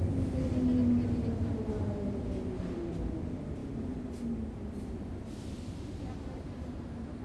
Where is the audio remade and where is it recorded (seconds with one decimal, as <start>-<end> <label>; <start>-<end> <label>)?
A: 0.0-7.2 recorded

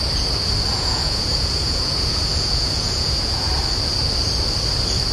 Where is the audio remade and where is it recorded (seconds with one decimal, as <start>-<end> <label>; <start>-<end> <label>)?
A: 0.0-0.7 recorded; 0.7-3.5 remade; 3.5-5.1 recorded

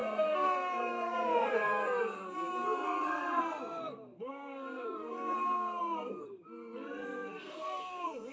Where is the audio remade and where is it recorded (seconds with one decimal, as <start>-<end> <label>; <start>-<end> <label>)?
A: 0.0-8.3 remade

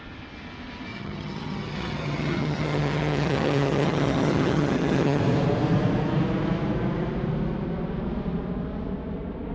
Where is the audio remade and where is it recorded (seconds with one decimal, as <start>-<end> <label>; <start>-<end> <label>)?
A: 0.0-0.9 recorded; 0.9-5.2 remade; 5.2-9.5 recorded